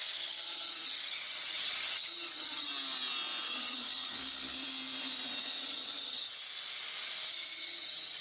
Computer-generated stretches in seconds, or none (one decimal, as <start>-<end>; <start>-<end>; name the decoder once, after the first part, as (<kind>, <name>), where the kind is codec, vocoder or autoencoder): 0.0-2.7 (vocoder, HiFi-GAN); 3.4-4.2; 5.4-6.5; 7.3-8.2